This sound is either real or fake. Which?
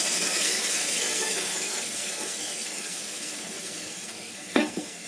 fake